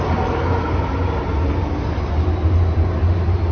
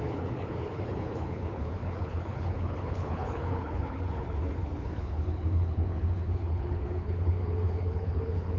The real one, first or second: first